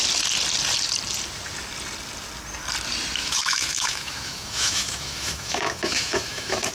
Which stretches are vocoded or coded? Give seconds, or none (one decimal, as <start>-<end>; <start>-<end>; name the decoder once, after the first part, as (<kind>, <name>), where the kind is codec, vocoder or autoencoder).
3.2-6.7 (autoencoder, DAC-VAE)